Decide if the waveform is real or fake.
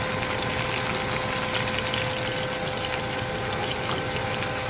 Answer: real